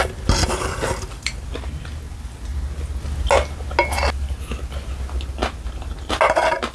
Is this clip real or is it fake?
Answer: real